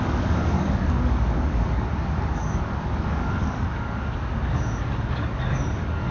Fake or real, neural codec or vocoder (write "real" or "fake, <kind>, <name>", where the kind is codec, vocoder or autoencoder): fake, codec, DAC